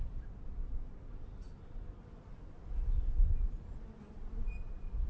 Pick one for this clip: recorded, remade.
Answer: recorded